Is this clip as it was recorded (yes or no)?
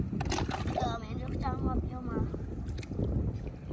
yes